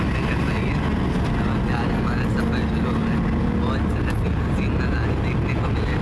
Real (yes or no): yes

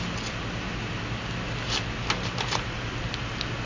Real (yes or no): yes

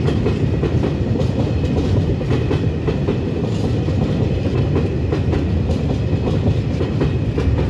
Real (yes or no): yes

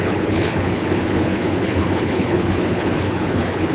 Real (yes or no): no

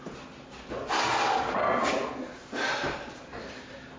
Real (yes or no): yes